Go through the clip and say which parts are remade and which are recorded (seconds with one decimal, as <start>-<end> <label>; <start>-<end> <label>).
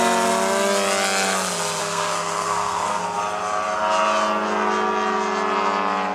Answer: 0.0-1.8 recorded; 1.8-3.0 remade; 3.0-6.1 recorded